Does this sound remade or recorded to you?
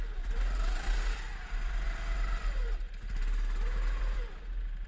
recorded